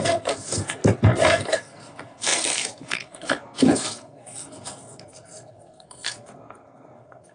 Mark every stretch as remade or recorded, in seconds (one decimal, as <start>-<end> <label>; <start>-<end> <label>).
0.0-0.8 remade; 0.8-1.3 recorded; 1.3-7.3 remade